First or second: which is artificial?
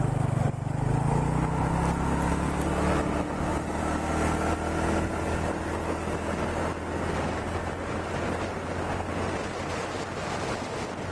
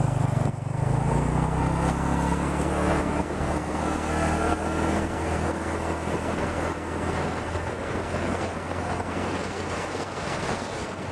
second